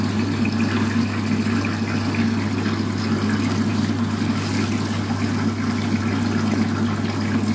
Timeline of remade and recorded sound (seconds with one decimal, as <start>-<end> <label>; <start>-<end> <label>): 0.0-7.5 recorded